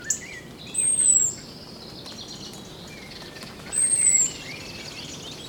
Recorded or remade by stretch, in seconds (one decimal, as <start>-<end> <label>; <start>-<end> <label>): 0.0-5.5 recorded